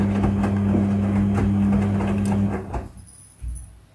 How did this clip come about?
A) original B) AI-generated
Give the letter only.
A